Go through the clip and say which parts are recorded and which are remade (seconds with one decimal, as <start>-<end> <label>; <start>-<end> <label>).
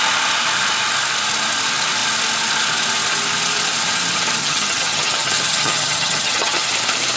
0.0-4.4 recorded; 4.4-6.7 remade; 6.7-7.2 recorded